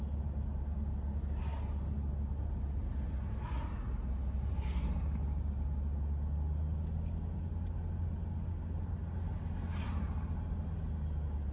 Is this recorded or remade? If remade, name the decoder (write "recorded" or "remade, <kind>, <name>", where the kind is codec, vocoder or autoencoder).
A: recorded